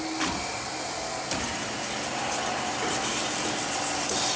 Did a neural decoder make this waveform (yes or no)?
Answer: no